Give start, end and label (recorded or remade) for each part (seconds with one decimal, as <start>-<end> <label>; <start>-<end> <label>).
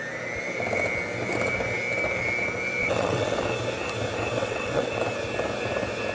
0.0-2.8 recorded; 2.8-3.4 remade; 3.4-4.4 recorded; 4.4-5.0 remade; 5.0-6.1 recorded